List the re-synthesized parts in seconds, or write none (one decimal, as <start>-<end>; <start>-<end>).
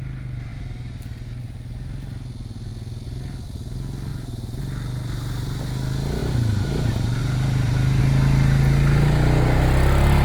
4.1-4.6; 6.2-8.0